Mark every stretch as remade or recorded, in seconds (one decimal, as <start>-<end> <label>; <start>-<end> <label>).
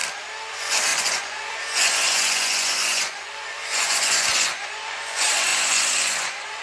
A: 0.0-0.5 recorded; 0.5-6.6 remade